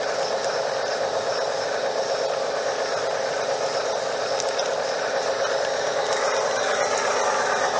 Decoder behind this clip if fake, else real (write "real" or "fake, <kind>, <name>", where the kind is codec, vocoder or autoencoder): real